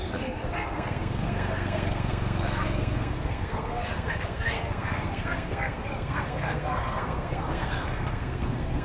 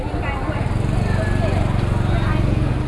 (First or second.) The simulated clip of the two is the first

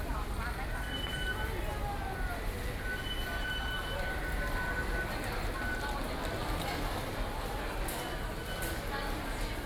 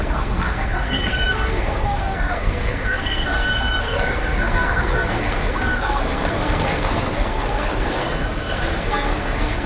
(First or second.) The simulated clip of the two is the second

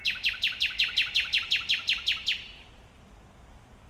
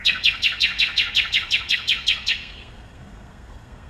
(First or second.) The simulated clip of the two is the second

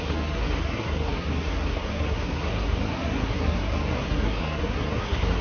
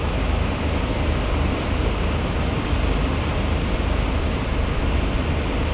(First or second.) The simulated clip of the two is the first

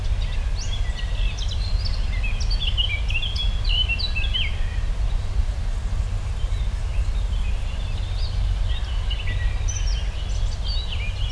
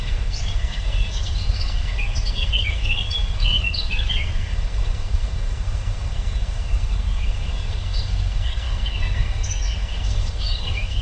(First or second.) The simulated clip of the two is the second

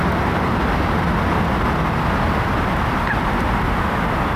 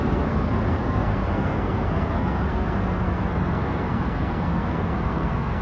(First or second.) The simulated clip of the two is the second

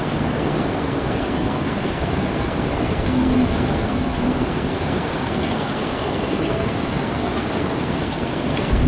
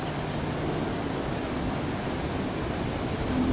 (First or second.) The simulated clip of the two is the first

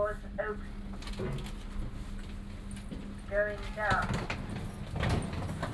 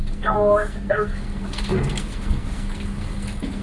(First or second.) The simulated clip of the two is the second